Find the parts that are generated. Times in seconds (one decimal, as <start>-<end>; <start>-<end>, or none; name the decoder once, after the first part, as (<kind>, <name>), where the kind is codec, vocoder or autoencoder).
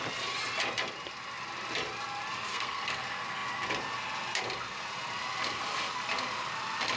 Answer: 2.5-3.0 (codec, SNAC)